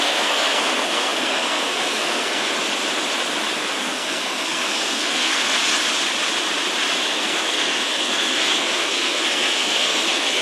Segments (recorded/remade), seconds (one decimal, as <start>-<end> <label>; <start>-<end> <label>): 0.0-2.5 remade; 2.5-3.8 recorded; 3.8-5.6 remade; 5.6-6.9 recorded; 6.9-10.4 remade